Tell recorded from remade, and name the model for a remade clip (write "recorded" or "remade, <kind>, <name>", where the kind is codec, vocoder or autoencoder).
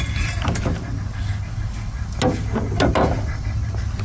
recorded